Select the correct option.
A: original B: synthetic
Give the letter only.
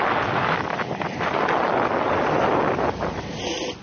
A